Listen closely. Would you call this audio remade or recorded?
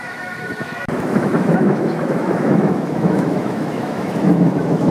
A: remade